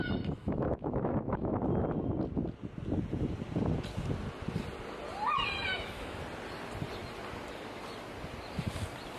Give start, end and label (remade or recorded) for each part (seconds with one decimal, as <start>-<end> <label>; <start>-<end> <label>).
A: 0.0-0.4 recorded; 0.4-1.5 remade; 1.5-5.7 recorded; 5.7-6.2 remade; 6.2-9.2 recorded